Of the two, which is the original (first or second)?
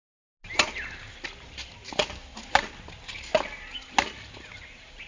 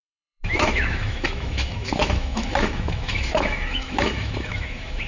first